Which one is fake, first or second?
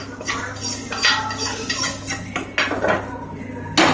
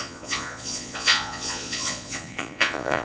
second